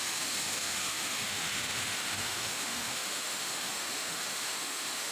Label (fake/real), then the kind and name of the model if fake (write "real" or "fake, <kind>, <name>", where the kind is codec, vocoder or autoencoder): fake, autoencoder, DAC-VAE